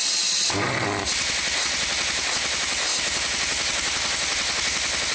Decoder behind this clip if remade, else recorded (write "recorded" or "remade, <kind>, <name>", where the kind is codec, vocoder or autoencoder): recorded